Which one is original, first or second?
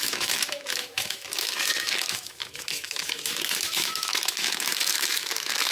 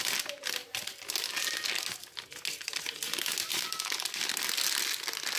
second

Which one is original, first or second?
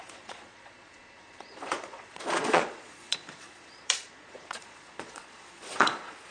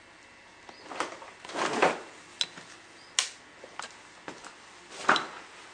second